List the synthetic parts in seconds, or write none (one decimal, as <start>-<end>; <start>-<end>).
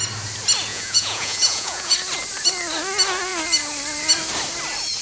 0.7-1.9